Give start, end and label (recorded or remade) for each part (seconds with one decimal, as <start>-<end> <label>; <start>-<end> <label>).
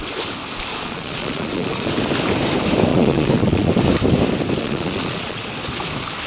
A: 0.0-0.7 recorded; 0.7-1.9 remade; 1.9-2.9 recorded; 2.9-3.7 remade; 3.7-4.6 recorded; 4.6-5.5 remade; 5.5-6.3 recorded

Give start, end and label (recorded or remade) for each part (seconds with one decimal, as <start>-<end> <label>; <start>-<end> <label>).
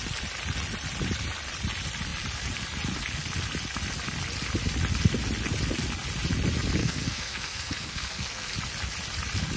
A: 0.0-6.8 recorded; 6.8-8.5 remade; 8.5-9.6 recorded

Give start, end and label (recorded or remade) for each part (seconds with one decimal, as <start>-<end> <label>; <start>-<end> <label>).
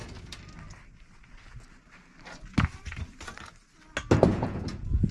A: 0.0-4.3 recorded; 4.3-5.1 remade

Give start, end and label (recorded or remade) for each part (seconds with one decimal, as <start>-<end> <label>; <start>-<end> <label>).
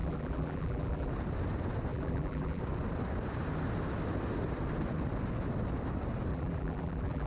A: 0.0-1.1 remade; 1.1-1.9 recorded; 1.9-2.6 remade; 2.6-6.3 recorded; 6.3-7.3 remade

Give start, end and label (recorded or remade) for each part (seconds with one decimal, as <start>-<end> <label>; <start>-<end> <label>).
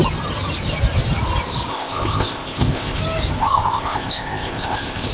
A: 0.0-1.7 recorded; 1.7-3.0 remade; 3.0-3.4 recorded; 3.4-5.1 remade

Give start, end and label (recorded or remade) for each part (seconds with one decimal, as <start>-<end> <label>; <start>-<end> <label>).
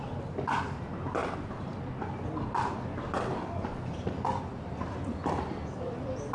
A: 0.0-6.3 recorded